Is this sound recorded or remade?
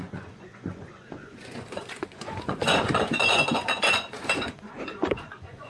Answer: remade